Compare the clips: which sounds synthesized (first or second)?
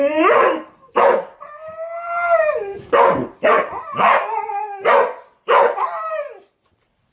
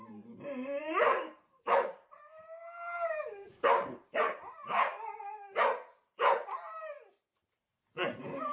second